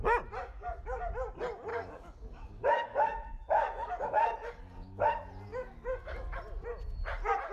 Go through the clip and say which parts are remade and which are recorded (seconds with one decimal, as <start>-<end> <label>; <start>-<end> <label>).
0.0-0.4 recorded; 0.4-1.0 remade; 1.0-1.7 recorded; 1.7-5.1 remade; 5.1-5.5 recorded; 5.5-6.4 remade; 6.4-7.5 recorded